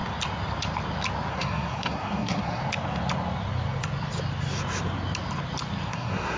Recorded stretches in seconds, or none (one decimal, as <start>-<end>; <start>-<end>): 0.0-1.3; 2.6-5.9